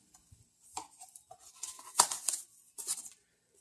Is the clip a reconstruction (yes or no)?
no